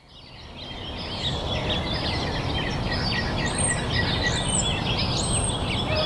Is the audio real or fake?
real